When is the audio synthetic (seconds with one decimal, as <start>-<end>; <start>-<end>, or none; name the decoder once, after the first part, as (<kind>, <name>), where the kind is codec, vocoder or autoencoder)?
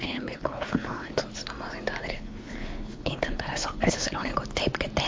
0.0-1.2 (codec, HILCodec); 2.1-4.3